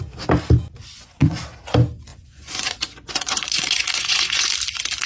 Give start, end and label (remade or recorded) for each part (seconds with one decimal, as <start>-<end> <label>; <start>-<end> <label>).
0.0-0.8 recorded; 0.8-1.4 remade; 1.4-2.1 recorded; 2.1-4.5 remade; 4.5-5.1 recorded